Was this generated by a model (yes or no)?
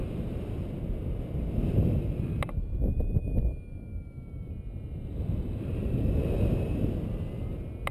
no